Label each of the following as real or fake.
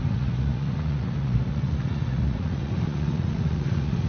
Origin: fake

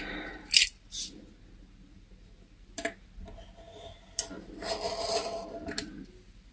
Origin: real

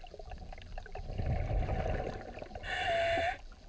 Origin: real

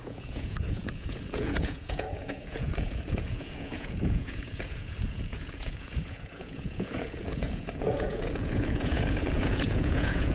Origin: fake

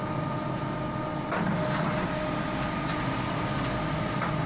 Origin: real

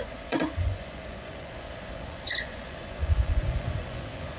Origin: fake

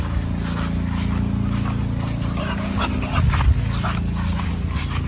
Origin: real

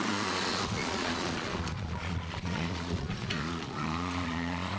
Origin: fake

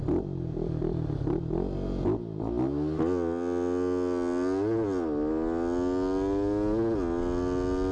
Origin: real